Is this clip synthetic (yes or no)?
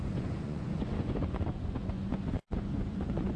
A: yes